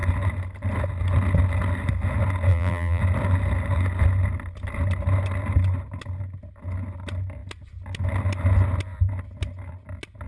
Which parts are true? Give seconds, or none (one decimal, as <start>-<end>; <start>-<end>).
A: 0.0-2.5; 3.0-10.3